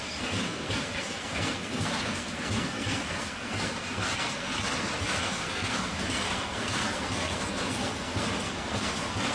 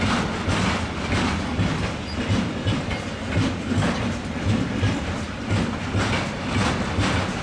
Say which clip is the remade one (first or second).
first